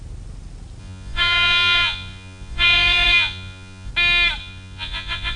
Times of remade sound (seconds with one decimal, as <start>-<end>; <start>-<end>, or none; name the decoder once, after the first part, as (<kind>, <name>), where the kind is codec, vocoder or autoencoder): 0.8-3.9 (vocoder, Vocos); 4.4-5.4